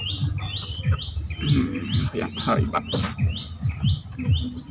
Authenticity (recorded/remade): recorded